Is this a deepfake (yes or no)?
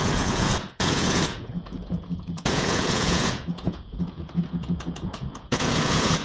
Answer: yes